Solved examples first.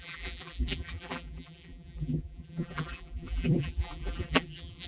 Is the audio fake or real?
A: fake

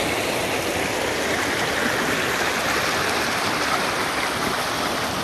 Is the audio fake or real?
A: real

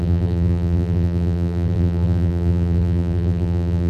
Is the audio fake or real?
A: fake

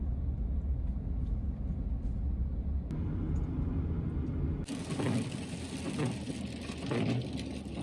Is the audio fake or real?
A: real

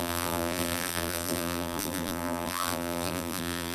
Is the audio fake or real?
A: fake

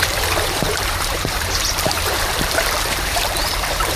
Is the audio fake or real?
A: fake